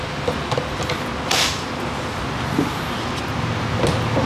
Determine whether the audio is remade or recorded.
recorded